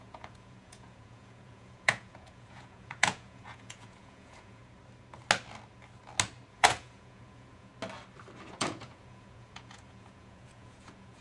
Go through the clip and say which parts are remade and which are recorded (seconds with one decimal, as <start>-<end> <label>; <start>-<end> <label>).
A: 0.0-4.6 remade; 4.6-6.5 recorded; 6.5-7.7 remade; 7.7-8.5 recorded; 8.5-11.2 remade